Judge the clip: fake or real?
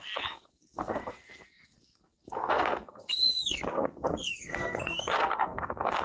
fake